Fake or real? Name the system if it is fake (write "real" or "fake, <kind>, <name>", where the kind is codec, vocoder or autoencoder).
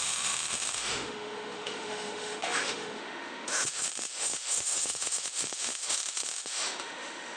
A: fake, autoencoder, DAC-VAE